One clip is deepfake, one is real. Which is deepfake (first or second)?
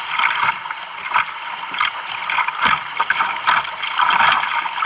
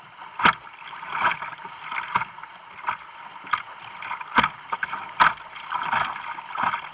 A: first